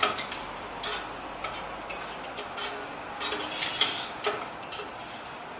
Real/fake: real